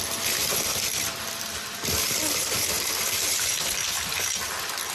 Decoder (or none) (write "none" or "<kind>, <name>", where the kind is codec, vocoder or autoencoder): vocoder, BigVGAN v2